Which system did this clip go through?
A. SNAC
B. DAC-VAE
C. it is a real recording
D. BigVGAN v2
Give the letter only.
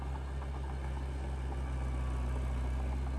C